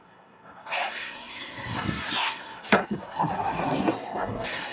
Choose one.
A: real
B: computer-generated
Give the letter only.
B